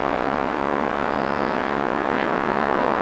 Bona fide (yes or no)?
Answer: no